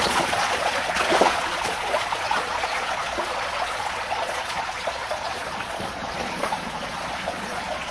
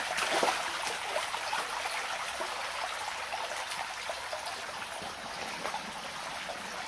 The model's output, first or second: first